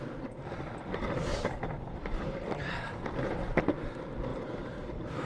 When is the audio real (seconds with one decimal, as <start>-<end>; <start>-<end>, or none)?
0.0-1.3; 3.6-4.3